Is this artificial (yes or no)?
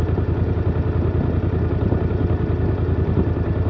no